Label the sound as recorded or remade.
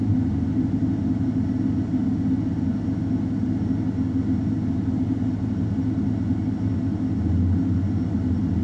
recorded